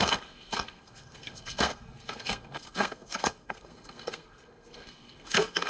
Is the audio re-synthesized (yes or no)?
yes